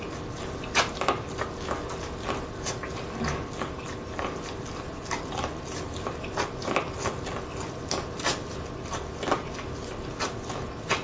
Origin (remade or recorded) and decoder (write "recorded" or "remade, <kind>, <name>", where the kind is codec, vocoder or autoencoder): recorded